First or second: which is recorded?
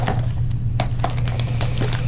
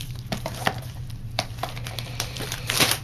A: first